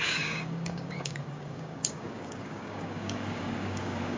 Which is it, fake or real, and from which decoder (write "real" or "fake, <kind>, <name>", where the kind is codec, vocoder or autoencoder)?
fake, codec, DAC